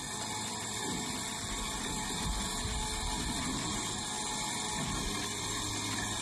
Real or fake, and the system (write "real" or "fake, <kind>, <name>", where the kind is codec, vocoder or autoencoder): real